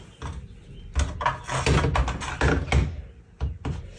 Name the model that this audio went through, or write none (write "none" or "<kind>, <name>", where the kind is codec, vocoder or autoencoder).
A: none